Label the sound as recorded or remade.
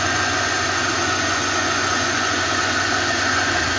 remade